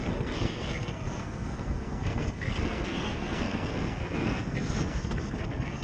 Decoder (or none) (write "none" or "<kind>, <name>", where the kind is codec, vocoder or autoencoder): codec, SNAC